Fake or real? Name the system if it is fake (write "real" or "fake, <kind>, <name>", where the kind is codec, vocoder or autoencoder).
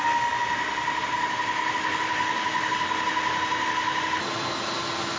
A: real